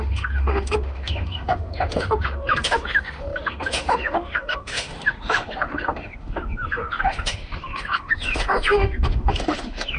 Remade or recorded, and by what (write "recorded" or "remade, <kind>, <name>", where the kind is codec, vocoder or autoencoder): remade, autoencoder, DAC-VAE